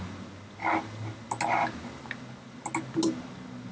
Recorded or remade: recorded